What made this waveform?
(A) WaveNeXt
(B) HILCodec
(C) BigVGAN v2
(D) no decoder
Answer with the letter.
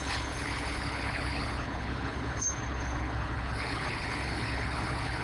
B